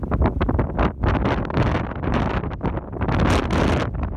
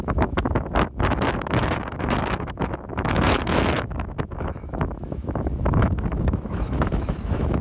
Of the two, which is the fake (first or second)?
second